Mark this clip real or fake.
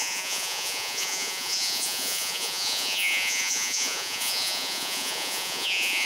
fake